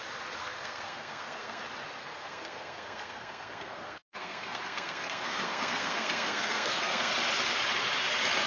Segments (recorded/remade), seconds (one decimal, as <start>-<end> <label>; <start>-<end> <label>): 0.0-0.4 recorded; 0.4-1.6 remade; 1.6-2.0 recorded; 2.0-7.1 remade; 7.1-8.5 recorded